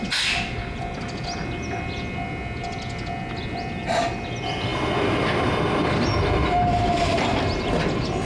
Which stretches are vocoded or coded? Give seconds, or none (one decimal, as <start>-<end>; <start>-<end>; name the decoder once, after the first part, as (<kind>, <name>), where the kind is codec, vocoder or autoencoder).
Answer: none